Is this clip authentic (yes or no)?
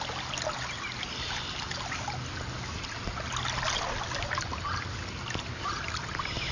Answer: yes